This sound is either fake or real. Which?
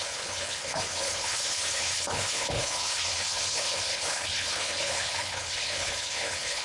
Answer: fake